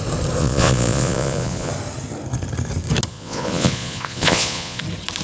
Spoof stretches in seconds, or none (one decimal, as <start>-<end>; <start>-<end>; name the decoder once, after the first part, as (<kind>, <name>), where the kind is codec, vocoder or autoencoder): 0.4-1.7 (vocoder, Vocos); 3.1-4.8